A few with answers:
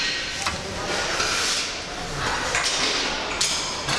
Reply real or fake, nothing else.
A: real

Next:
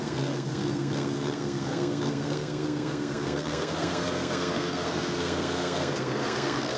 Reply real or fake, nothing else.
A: fake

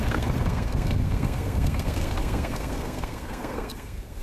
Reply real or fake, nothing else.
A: fake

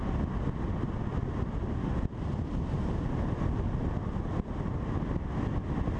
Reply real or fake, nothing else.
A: real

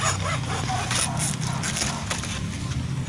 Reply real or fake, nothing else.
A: real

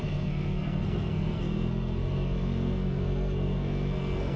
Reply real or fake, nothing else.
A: fake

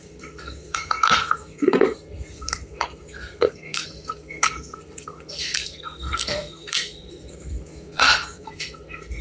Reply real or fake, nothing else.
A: fake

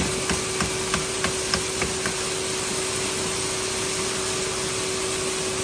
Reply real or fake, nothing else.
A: real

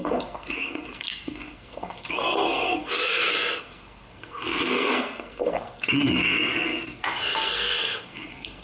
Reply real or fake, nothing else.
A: fake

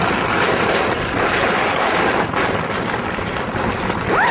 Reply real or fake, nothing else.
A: real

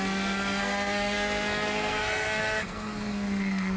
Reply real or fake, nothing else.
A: fake